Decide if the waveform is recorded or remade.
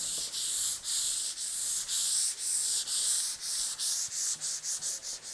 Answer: recorded